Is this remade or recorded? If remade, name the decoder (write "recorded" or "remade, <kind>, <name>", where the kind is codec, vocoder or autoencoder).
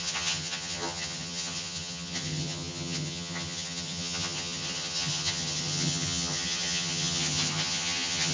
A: remade, vocoder, HiFi-GAN